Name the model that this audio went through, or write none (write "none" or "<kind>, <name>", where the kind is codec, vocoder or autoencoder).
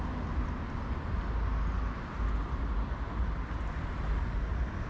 none